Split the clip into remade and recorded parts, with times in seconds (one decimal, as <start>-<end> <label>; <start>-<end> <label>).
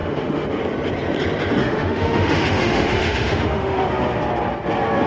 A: 0.0-0.6 remade; 0.6-1.6 recorded; 1.6-3.9 remade; 3.9-5.1 recorded